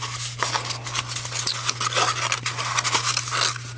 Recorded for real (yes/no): yes